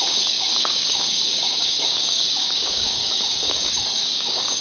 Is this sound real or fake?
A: fake